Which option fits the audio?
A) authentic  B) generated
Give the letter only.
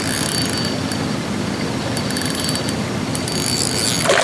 A